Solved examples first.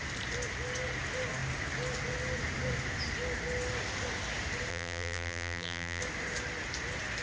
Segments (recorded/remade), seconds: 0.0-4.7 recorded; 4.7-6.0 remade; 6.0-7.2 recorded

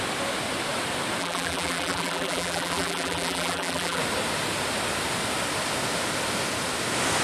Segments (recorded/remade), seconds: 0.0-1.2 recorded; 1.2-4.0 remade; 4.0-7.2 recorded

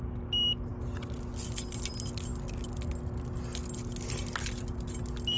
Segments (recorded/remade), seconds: 0.0-5.4 recorded

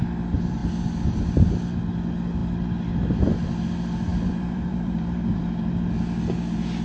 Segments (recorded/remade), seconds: 0.0-4.1 recorded; 4.1-5.4 remade; 5.4-6.8 recorded

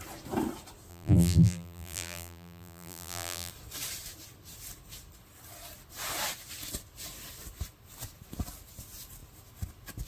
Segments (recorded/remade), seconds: 0.0-0.9 recorded; 0.9-3.5 remade; 3.5-10.1 recorded

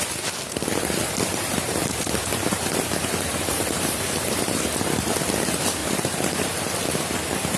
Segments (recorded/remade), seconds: 0.0-1.8 recorded; 1.8-4.9 remade; 4.9-5.8 recorded; 5.8-6.7 remade; 6.7-7.6 recorded

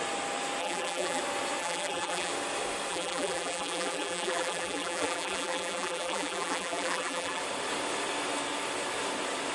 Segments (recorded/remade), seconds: 0.0-0.6 recorded; 0.6-1.2 remade; 1.2-1.6 recorded; 1.6-2.3 remade; 2.3-2.9 recorded; 2.9-7.4 remade; 7.4-9.5 recorded